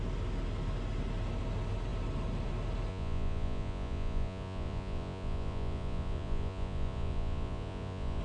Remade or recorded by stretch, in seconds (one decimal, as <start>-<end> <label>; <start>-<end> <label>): 0.0-2.9 recorded; 2.9-8.2 remade